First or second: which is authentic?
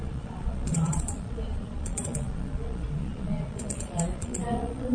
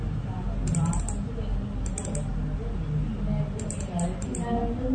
second